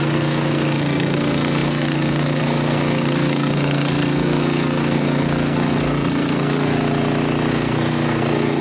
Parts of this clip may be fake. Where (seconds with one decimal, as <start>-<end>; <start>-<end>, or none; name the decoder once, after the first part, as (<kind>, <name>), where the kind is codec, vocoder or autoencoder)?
0.0-6.8 (codec, SNAC); 7.5-8.6